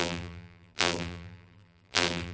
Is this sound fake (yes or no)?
yes